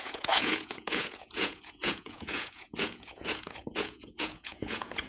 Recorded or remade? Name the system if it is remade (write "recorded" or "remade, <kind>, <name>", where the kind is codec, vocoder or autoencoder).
remade, vocoder, Vocos